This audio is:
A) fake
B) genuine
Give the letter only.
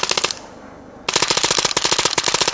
B